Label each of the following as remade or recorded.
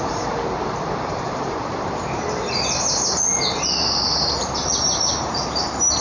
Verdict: remade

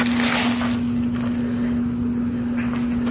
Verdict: recorded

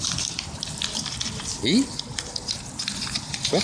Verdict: recorded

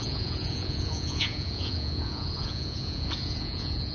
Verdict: remade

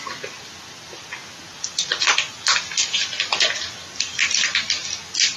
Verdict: recorded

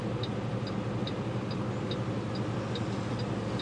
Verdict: recorded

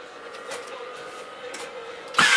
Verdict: remade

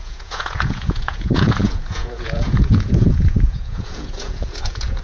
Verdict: remade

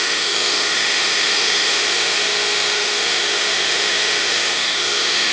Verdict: remade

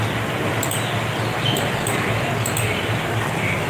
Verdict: recorded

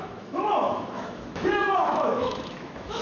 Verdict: remade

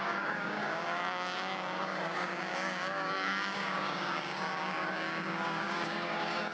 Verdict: remade